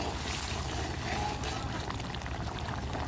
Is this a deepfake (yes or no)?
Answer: no